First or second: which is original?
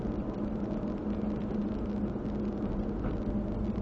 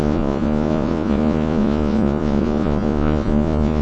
first